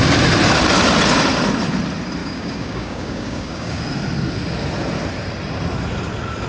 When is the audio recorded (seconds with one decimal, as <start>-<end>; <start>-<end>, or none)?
0.0-2.2; 3.8-6.5